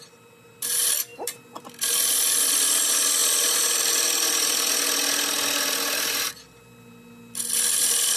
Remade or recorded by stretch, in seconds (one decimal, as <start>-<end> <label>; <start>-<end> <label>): 0.0-8.2 recorded